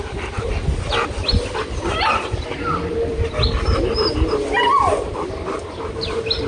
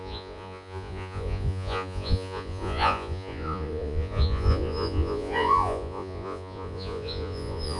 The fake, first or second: second